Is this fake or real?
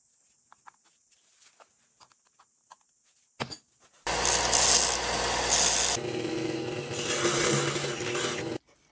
real